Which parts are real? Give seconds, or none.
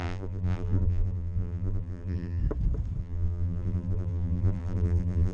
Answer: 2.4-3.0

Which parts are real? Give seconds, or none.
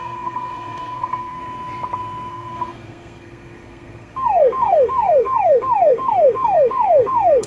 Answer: 1.4-2.3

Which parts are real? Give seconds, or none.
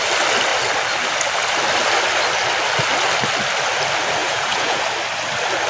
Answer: 0.0-4.2; 4.8-5.7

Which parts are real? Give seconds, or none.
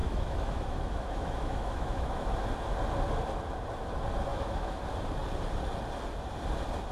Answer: 2.3-4.3; 4.8-6.9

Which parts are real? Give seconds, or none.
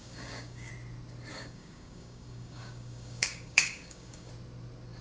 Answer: 0.7-1.3; 4.3-5.0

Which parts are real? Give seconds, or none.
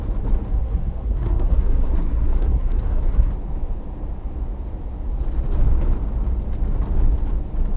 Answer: 0.0-0.6; 3.3-7.8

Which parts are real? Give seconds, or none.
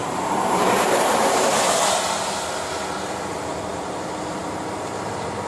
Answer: 1.5-5.5